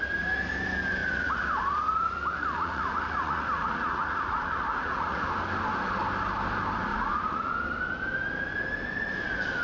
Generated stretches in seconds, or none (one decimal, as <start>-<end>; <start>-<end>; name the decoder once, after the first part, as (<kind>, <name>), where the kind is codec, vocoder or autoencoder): 1.0-5.2 (vocoder, Vocos); 6.9-7.5